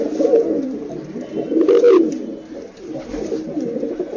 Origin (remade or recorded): recorded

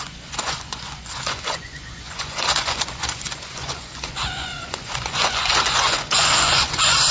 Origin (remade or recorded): remade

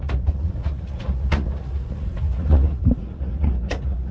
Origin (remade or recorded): remade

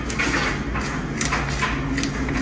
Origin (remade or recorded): recorded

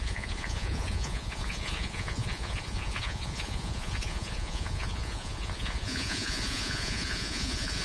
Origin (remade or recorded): remade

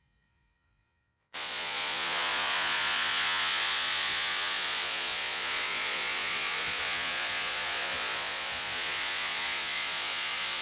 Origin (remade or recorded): remade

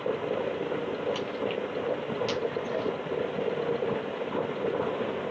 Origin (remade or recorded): recorded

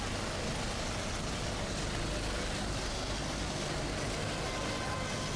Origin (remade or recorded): recorded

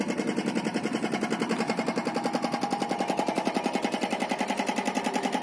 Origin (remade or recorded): recorded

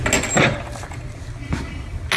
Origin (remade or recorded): recorded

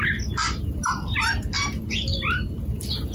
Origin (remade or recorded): recorded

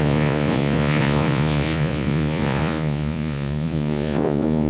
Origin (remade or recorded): remade